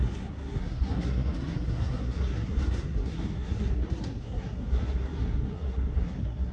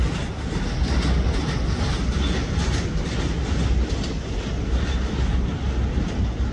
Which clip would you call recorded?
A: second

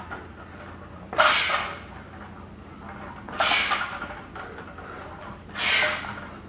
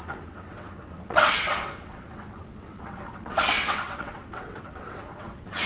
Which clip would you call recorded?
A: first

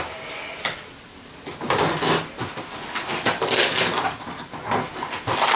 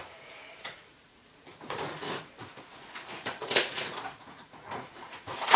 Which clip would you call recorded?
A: first